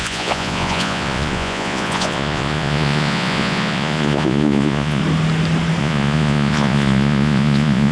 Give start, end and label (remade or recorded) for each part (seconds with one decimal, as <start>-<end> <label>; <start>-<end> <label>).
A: 0.0-5.0 remade; 5.0-5.8 recorded; 5.8-7.9 remade